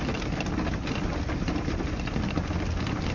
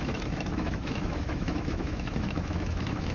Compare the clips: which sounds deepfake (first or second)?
second